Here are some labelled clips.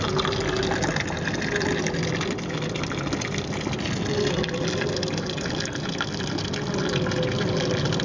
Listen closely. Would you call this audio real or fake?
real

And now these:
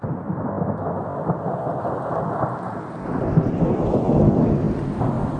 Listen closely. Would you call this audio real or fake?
real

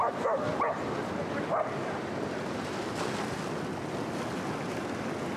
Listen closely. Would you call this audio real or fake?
real